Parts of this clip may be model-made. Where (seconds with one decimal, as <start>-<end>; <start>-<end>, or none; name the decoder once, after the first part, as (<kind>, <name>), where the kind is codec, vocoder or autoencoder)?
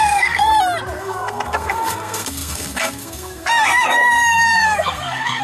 0.0-0.5 (codec, SNAC); 1.0-5.4